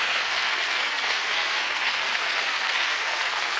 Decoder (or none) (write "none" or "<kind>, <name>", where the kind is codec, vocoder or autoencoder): codec, SNAC